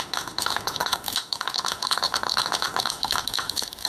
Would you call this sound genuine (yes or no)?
no